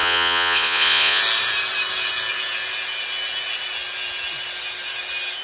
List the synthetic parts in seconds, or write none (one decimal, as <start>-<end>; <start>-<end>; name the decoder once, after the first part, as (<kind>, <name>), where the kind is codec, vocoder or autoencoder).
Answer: 0.0-1.2 (vocoder, Vocos)